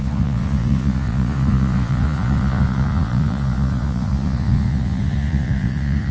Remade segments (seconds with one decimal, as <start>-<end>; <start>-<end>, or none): 0.0-6.1